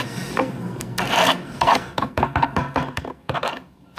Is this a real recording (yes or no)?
no